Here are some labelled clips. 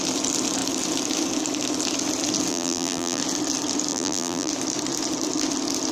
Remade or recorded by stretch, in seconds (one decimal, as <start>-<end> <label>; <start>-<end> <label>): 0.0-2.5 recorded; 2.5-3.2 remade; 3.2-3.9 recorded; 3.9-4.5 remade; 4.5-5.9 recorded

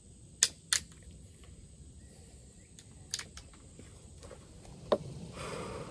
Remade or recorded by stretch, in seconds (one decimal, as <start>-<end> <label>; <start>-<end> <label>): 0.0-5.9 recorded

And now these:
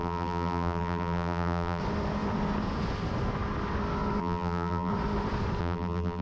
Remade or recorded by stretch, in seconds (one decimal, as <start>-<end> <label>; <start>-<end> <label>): 0.0-1.8 remade; 1.8-4.2 recorded; 4.2-4.9 remade; 4.9-5.6 recorded; 5.6-6.2 remade